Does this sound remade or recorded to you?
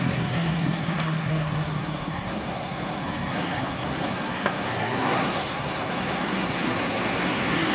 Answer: remade